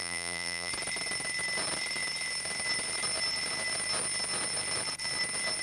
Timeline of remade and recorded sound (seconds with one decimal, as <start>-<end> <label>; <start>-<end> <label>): 0.0-0.7 remade; 0.7-5.6 recorded

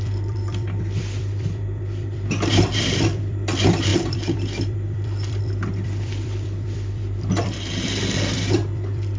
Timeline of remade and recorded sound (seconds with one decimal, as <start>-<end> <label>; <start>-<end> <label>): 0.0-9.2 remade